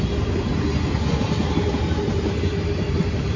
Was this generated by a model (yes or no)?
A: no